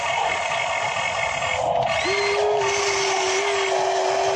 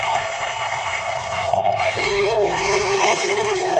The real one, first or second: first